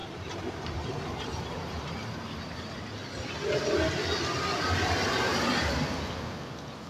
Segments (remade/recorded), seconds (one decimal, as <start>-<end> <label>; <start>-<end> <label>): 0.0-2.9 remade; 2.9-5.3 recorded; 5.3-5.8 remade; 5.8-6.9 recorded